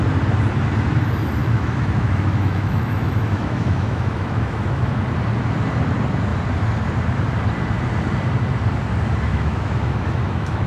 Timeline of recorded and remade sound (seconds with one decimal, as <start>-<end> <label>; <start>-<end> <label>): 0.0-1.4 recorded; 1.4-5.0 remade; 5.0-9.3 recorded; 9.3-10.7 remade